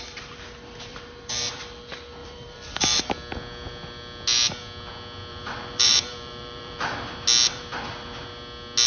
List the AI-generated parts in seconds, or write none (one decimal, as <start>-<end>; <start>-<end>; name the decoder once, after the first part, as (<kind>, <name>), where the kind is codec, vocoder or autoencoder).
0.9-1.5 (vocoder, BigVGAN v2); 2.2-3.0; 5.3-6.8